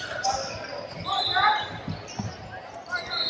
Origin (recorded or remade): recorded